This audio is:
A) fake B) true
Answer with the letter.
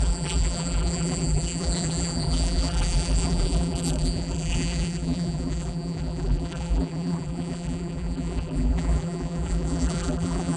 A